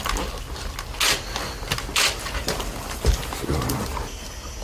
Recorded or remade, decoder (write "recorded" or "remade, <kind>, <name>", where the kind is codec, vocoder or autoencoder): recorded